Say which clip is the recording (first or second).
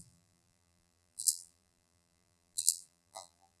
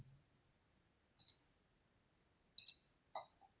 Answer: second